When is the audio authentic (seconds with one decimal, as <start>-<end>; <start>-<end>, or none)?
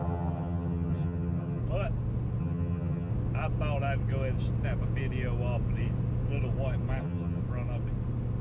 1.6-2.4; 3.1-7.0; 7.4-8.4